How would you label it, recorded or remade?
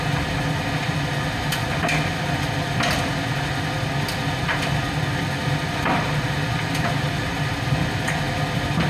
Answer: recorded